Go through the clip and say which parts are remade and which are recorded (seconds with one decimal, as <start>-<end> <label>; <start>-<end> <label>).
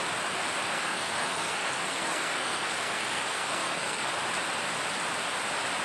0.0-0.6 recorded; 0.6-4.1 remade; 4.1-5.8 recorded